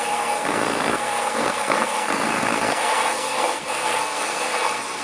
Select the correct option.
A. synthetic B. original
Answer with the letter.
A